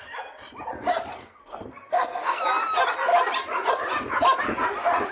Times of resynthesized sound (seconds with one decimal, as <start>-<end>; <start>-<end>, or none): 1.1-2.4

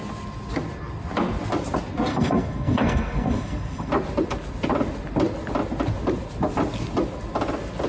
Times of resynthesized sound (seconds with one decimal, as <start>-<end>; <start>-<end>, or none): 2.1-3.9

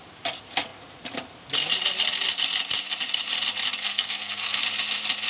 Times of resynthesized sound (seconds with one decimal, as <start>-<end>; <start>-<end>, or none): 3.8-4.6

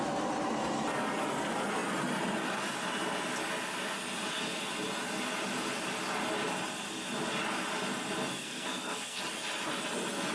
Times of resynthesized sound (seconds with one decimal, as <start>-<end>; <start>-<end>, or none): 8.3-9.2

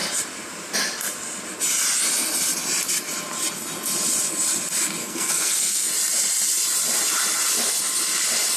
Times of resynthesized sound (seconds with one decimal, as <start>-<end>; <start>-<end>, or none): 5.0-5.9

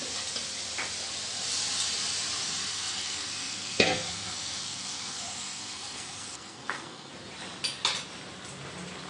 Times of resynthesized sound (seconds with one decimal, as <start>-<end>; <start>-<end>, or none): 2.7-7.1

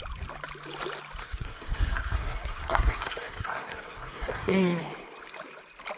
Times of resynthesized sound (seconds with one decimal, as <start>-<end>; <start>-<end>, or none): 1.2-4.8